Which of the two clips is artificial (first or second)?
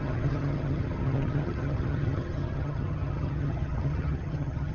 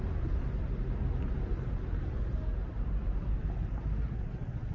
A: first